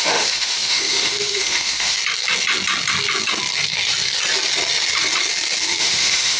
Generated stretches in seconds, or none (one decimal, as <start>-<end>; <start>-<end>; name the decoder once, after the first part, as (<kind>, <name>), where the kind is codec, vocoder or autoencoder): 0.0-2.0 (autoencoder, DAC-VAE); 5.8-6.4